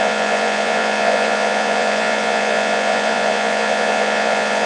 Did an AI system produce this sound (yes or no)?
yes